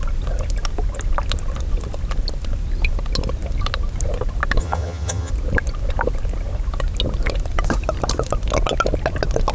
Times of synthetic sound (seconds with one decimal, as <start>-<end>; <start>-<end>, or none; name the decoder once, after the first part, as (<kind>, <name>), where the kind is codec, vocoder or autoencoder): 4.6-5.3 (vocoder, HiFi-GAN)